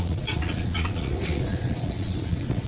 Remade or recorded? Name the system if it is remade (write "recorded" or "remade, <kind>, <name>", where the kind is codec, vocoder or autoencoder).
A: remade, vocoder, Vocos